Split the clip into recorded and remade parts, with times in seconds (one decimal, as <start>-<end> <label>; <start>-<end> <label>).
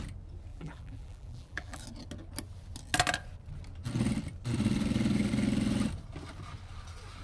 0.0-0.5 recorded; 0.5-1.8 remade; 1.8-7.2 recorded